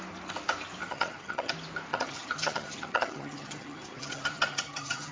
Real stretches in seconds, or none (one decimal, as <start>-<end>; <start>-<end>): 0.0-0.8; 1.5-1.9